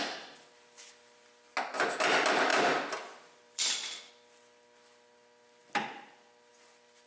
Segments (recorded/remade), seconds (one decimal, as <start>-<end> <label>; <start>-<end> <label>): 0.0-2.5 recorded; 2.5-4.1 remade; 4.1-5.6 recorded; 5.6-6.5 remade; 6.5-7.1 recorded